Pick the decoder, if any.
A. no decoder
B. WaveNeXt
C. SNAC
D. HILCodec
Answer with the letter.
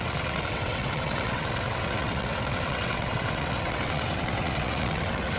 B